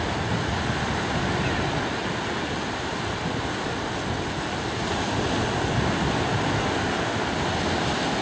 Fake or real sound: real